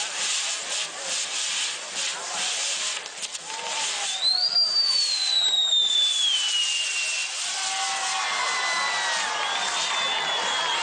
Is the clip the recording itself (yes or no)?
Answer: yes